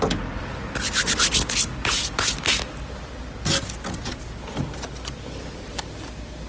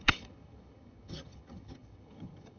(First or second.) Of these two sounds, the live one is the first